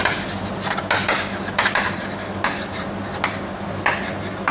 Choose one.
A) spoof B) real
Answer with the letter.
B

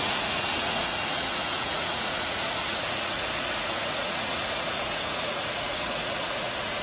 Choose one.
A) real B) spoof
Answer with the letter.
B